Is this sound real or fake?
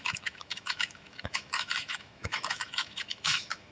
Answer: fake